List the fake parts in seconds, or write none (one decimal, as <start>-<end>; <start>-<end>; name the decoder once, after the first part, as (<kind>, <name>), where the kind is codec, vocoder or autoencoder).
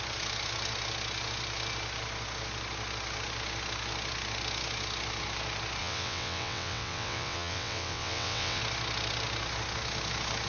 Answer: 5.8-8.6 (vocoder, WaveNeXt)